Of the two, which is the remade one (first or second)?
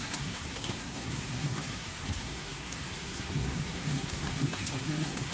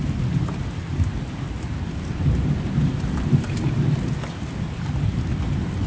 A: first